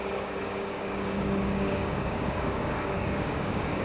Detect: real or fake fake